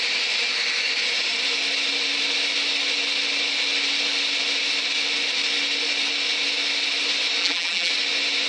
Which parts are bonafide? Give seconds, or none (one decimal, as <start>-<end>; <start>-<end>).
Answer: 0.0-7.4; 7.9-8.5